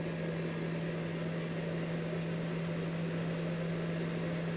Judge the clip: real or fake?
real